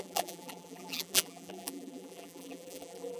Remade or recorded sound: remade